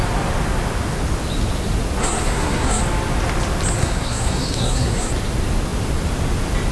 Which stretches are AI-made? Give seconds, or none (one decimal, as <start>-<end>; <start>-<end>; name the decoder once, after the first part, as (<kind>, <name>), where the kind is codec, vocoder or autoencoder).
2.0-2.8 (codec, SNAC); 3.8-5.1